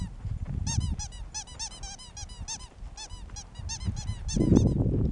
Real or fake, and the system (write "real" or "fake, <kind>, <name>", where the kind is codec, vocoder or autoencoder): real